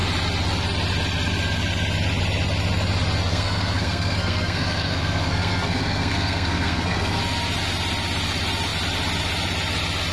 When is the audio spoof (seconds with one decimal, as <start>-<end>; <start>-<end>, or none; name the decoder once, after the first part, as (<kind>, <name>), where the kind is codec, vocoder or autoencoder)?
3.3-7.2 (codec, SNAC)